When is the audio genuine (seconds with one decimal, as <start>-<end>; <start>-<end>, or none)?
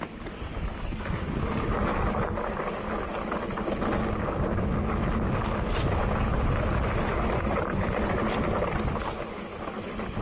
0.0-0.5; 1.6-10.2